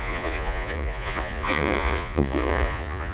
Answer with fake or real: fake